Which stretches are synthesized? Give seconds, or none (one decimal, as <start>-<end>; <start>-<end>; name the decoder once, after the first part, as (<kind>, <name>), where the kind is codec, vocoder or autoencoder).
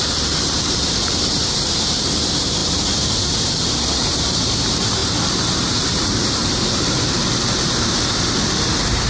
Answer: 0.0-5.0 (vocoder, BigVGAN v2); 5.7-9.1